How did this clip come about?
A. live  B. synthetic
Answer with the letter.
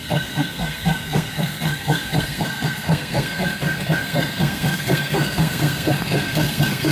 B